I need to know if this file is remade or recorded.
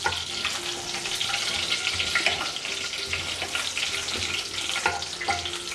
recorded